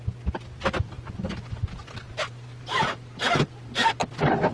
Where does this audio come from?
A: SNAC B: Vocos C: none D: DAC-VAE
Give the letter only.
C